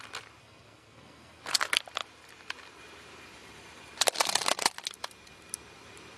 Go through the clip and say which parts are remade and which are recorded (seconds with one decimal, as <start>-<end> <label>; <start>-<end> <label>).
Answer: 0.0-0.4 recorded; 0.4-1.4 remade; 1.4-6.2 recorded